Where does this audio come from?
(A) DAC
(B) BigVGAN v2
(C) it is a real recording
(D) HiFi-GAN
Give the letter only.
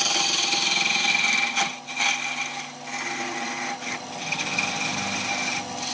C